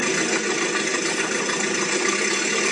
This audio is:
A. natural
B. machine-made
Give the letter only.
A